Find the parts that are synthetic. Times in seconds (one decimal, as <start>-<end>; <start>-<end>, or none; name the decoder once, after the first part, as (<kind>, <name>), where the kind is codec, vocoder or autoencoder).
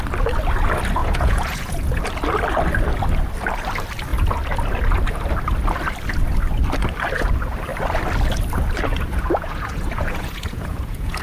1.0-2.0 (vocoder, Vocos); 8.9-11.2